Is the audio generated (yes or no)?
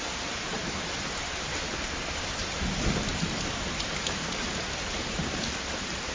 yes